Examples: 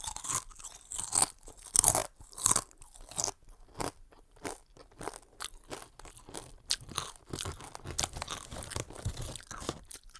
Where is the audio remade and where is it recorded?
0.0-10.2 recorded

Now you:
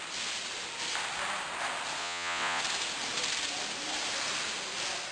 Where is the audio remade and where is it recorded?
0.0-2.0 recorded; 2.0-2.6 remade; 2.6-5.1 recorded